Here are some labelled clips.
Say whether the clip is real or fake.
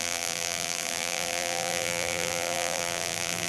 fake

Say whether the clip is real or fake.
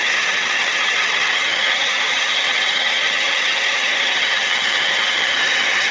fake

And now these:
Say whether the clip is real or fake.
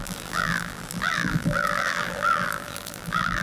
fake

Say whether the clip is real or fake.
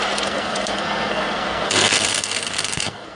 fake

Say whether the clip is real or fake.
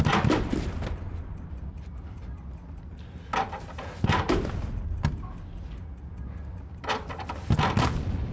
real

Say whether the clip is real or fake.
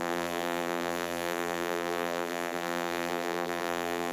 fake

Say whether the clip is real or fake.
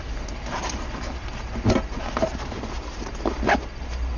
real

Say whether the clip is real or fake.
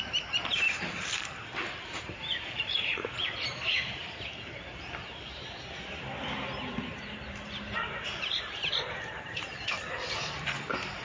fake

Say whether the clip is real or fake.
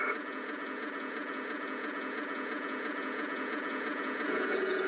fake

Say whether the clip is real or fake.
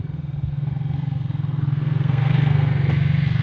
fake